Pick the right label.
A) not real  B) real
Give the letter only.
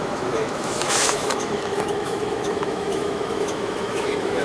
A